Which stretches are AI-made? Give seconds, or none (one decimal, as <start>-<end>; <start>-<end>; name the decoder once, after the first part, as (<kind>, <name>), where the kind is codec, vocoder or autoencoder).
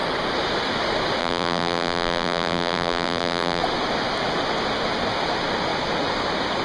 1.2-3.6 (vocoder, BigVGAN v2)